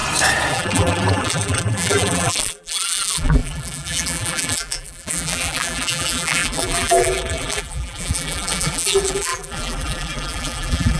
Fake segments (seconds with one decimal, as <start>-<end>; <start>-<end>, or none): 0.5-11.0